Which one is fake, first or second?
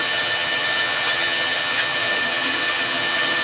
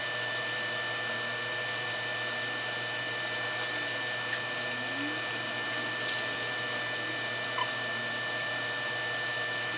first